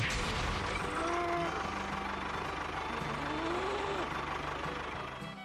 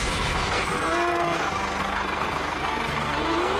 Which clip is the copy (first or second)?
second